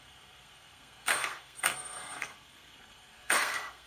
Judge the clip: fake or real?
fake